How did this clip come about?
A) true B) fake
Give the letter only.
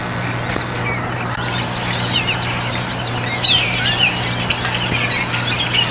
A